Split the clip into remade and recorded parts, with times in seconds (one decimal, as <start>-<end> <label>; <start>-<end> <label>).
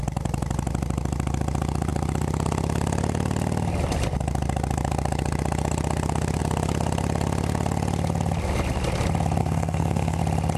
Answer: 0.0-9.4 recorded; 9.4-10.2 remade; 10.2-10.6 recorded